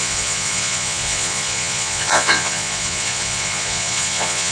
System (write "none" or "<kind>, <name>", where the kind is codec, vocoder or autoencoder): vocoder, Vocos